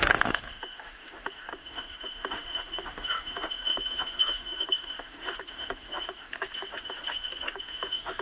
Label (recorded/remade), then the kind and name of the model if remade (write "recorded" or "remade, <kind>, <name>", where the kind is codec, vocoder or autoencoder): remade, autoencoder, DAC-VAE